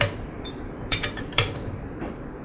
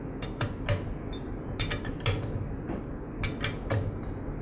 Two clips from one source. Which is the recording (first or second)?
second